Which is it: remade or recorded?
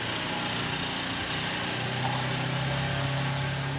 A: recorded